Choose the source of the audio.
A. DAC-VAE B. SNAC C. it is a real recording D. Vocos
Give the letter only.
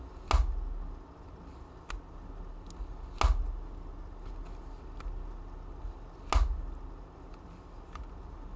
C